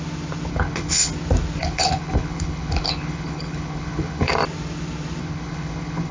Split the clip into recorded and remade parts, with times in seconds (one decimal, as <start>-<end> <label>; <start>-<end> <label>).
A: 0.0-0.5 recorded; 0.5-1.1 remade; 1.1-1.6 recorded; 1.6-4.3 remade; 4.3-5.2 recorded; 5.2-6.1 remade